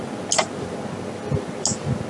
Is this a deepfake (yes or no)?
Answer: no